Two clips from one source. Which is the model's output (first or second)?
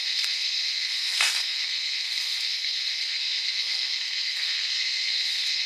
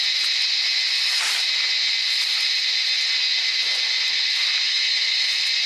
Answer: first